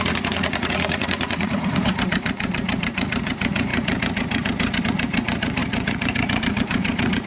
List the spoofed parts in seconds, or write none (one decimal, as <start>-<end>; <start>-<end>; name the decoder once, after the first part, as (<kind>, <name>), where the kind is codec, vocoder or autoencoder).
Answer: 0.0-7.3 (vocoder, Vocos)